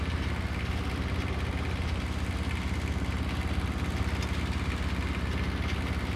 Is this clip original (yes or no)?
yes